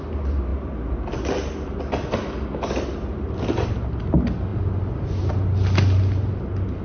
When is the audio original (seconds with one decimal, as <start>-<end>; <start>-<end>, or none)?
0.0-6.8